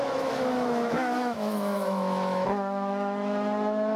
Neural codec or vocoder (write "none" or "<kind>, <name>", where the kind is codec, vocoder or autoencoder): autoencoder, DAC-VAE